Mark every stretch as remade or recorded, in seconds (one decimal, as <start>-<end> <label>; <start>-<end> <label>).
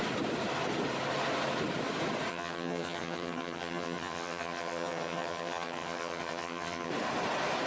0.0-2.3 recorded; 2.3-6.9 remade; 6.9-7.7 recorded